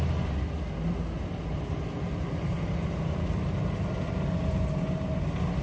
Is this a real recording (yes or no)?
yes